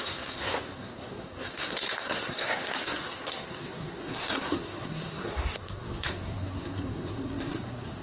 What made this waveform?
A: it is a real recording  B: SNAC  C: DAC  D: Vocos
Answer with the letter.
B